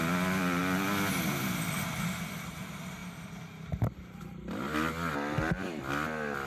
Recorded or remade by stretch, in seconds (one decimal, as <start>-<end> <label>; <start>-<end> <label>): 0.0-6.5 recorded